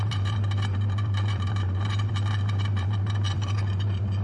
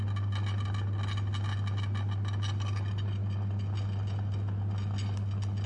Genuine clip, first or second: second